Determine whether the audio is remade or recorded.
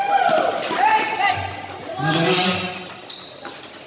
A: recorded